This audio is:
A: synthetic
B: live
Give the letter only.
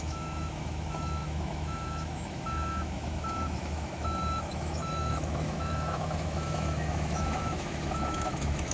A